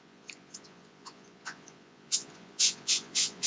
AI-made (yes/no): yes